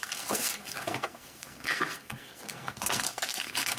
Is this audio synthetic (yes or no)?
yes